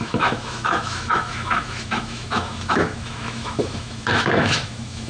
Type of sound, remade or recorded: remade